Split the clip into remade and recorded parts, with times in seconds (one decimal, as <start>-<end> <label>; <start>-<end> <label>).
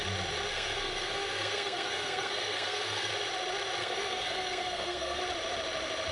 0.0-0.5 recorded; 0.5-3.1 remade; 3.1-3.8 recorded; 3.8-5.2 remade; 5.2-6.1 recorded